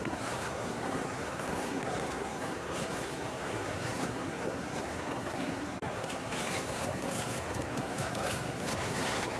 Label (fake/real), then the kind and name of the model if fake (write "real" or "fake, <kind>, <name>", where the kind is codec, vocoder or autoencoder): fake, codec, SNAC